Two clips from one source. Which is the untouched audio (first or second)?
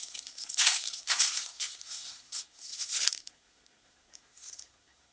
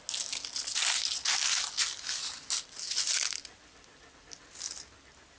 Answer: second